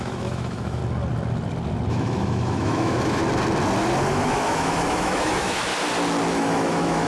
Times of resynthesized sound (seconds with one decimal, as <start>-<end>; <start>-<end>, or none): 0.0-0.8; 1.9-3.2; 4.1-5.7; 6.3-7.1